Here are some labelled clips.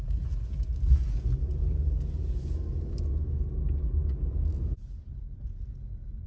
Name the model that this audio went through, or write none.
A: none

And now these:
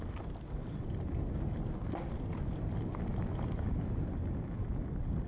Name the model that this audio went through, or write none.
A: none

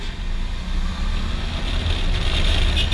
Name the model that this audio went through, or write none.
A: none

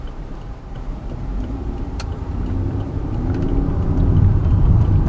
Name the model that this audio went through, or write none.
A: vocoder, BigVGAN v2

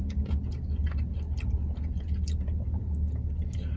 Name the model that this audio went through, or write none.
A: none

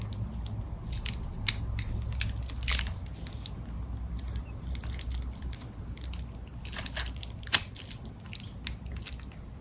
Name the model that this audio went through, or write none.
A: none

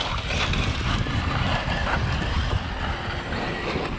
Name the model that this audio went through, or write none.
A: none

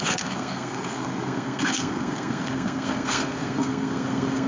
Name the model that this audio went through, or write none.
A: codec, SNAC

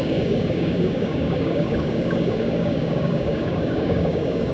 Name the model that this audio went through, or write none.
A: codec, DAC